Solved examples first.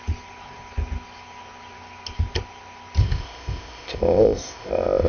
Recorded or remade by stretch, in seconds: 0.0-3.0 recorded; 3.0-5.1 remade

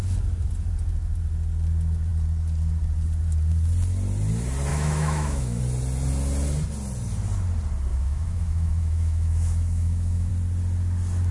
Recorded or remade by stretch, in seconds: 0.0-4.7 recorded; 4.7-5.6 remade; 5.6-7.9 recorded; 7.9-10.3 remade; 10.3-11.3 recorded